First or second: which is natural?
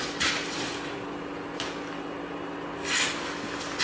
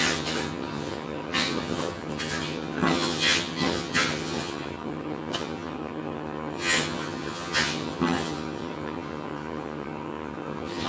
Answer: first